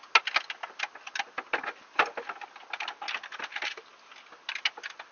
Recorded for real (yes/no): yes